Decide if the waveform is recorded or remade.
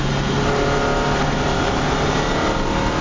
recorded